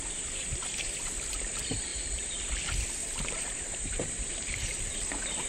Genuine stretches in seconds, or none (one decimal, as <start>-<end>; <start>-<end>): 0.0-3.0; 4.8-5.5